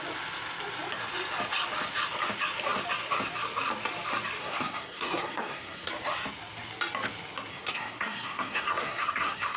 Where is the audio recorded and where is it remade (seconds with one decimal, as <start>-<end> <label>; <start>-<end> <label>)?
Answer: 0.0-4.4 recorded; 4.4-5.9 remade; 5.9-7.5 recorded; 7.5-9.6 remade